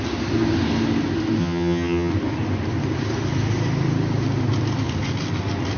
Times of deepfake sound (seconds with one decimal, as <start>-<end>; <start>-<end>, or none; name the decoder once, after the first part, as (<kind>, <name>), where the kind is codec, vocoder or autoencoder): 1.4-2.1 (vocoder, HiFi-GAN)